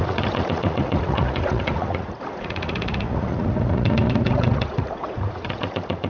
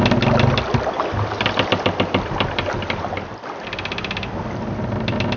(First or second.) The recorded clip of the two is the second